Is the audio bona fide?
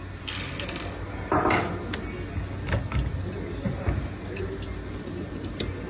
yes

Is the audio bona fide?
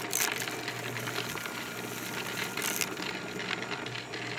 yes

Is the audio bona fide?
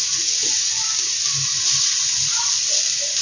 yes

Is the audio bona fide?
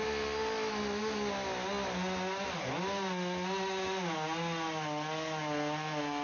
yes